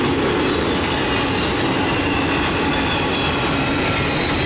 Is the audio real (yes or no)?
yes